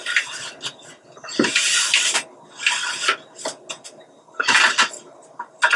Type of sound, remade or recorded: recorded